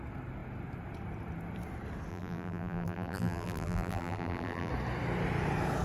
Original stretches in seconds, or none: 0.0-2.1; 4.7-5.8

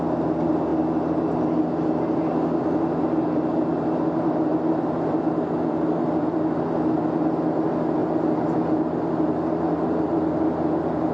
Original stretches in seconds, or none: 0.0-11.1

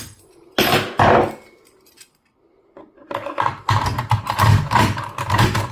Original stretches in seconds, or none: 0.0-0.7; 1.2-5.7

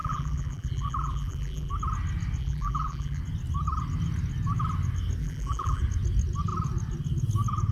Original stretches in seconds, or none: 1.7-2.4; 3.2-5.2; 5.8-7.7